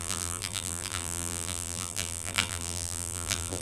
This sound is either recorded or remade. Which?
remade